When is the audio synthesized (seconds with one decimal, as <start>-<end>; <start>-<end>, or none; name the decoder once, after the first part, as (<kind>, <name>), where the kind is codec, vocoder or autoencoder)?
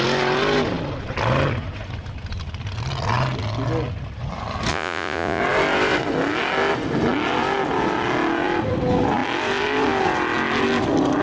4.7-5.4 (vocoder, Vocos)